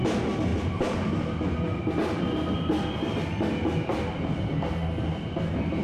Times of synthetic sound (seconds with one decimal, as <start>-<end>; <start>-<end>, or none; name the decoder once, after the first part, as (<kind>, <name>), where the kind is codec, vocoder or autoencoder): 0.5-1.1 (vocoder, BigVGAN v2)